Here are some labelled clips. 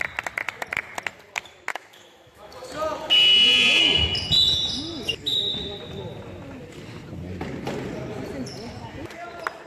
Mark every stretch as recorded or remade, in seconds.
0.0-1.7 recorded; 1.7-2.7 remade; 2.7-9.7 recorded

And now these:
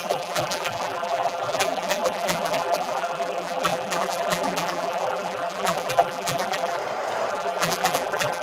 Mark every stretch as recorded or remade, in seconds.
0.0-6.8 remade; 6.8-7.3 recorded; 7.3-8.4 remade

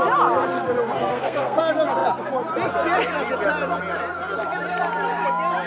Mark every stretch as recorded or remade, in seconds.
0.0-1.0 recorded; 1.0-1.6 remade; 1.6-5.7 recorded

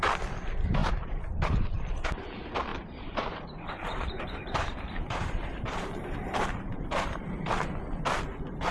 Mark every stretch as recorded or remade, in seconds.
0.0-0.8 recorded; 0.8-2.2 remade; 2.2-2.7 recorded; 2.7-7.4 remade; 7.4-8.7 recorded

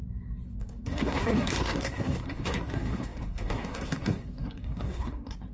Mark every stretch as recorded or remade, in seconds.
0.0-0.5 recorded; 0.5-5.5 remade

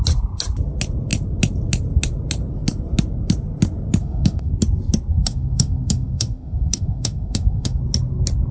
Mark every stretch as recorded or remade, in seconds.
0.0-4.0 recorded; 4.0-4.5 remade; 4.5-5.1 recorded; 5.1-7.8 remade; 7.8-8.5 recorded

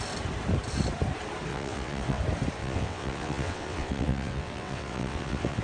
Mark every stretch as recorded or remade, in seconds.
0.0-1.5 recorded; 1.5-2.2 remade; 2.2-2.6 recorded; 2.6-5.6 remade

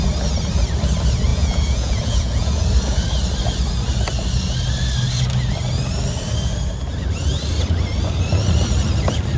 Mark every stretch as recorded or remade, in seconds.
0.0-1.3 recorded; 1.3-2.6 remade; 2.6-9.4 recorded